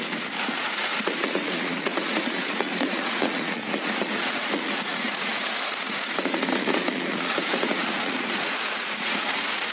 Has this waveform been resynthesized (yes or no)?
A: yes